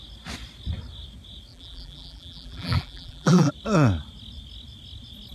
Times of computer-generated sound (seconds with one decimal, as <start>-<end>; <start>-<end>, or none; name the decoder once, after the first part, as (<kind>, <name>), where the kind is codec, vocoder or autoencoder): 1.5-3.5 (vocoder, BigVGAN v2)

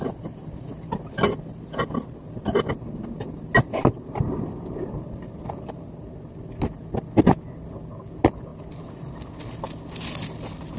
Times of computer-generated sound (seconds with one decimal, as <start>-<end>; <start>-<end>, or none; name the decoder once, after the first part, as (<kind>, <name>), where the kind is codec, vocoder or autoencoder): none

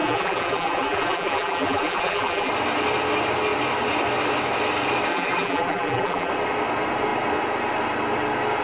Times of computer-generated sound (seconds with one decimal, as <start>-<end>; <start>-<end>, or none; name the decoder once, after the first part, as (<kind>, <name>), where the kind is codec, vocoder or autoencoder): 0.0-2.5 (vocoder, BigVGAN v2); 5.1-6.3